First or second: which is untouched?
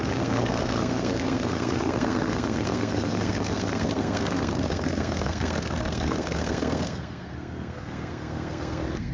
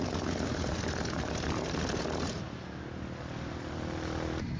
second